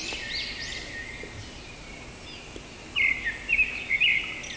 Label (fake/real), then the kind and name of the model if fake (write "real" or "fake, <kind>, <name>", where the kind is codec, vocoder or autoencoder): real